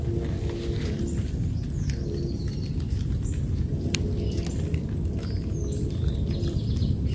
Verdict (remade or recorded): recorded